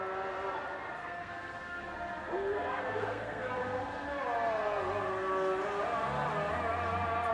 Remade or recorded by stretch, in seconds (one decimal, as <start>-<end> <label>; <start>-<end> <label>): 0.0-1.0 recorded; 1.0-1.8 remade; 1.8-2.5 recorded; 2.5-3.5 remade; 3.5-7.3 recorded